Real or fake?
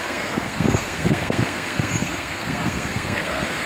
fake